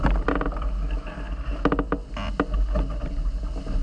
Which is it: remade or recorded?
recorded